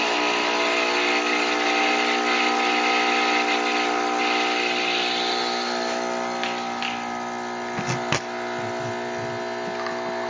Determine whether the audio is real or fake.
real